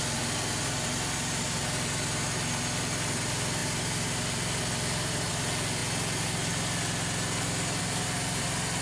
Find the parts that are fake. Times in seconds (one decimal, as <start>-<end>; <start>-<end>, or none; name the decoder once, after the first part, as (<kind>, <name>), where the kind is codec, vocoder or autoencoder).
none